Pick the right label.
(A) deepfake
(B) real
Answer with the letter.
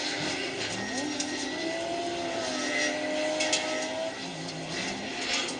B